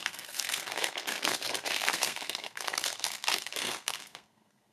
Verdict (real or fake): fake